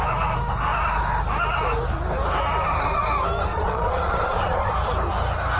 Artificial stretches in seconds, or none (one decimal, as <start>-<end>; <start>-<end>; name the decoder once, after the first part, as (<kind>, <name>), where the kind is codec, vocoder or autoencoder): 3.5-4.7 (vocoder, Vocos)